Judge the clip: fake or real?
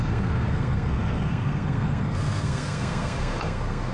fake